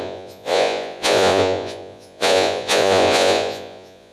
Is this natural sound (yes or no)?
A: no